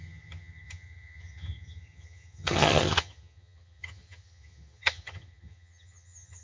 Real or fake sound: fake